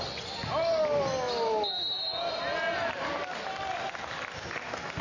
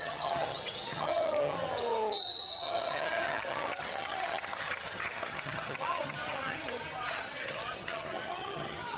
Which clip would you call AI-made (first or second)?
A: second